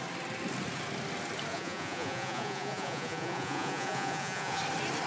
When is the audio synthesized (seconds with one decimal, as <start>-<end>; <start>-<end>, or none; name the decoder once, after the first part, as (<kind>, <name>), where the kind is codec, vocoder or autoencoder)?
1.5-4.6 (vocoder, Vocos)

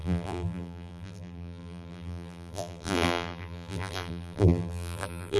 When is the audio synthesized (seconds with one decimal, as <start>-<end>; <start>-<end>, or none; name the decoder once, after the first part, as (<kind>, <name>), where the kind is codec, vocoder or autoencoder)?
0.0-5.4 (vocoder, BigVGAN v2)

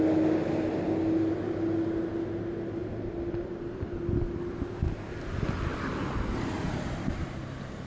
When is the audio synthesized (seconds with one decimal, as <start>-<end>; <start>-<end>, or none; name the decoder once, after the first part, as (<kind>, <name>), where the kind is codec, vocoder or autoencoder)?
none

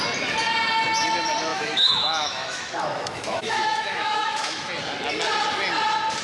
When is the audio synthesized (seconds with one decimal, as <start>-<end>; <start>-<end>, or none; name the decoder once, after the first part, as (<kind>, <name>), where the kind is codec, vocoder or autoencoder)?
1.5-4.7 (autoencoder, DAC-VAE)

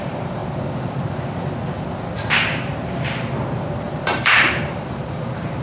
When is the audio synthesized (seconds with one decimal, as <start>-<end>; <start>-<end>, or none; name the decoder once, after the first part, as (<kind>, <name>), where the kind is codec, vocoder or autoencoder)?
0.0-0.4 (vocoder, BigVGAN v2); 3.8-5.6

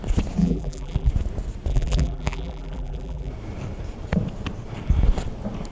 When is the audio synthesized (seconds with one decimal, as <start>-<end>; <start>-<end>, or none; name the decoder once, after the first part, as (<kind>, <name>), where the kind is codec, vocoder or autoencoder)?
0.4-1.1 (vocoder, BigVGAN v2); 1.7-3.3

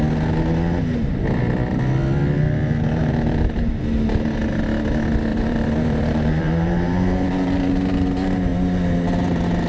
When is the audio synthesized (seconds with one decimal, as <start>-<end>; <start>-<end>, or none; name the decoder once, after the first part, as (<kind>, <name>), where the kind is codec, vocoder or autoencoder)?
3.0-3.7 (vocoder, BigVGAN v2); 5.3-7.7